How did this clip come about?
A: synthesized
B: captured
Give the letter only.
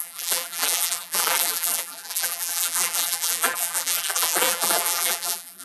A